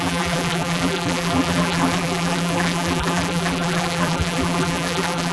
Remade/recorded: remade